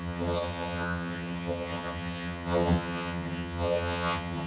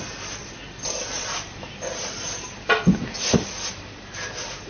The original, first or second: second